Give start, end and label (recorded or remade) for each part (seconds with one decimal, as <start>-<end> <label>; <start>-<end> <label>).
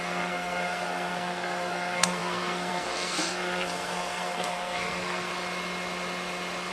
0.0-5.3 remade; 5.3-6.7 recorded